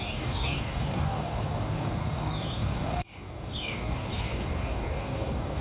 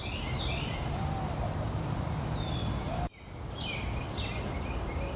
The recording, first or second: second